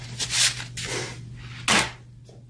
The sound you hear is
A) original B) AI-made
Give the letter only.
A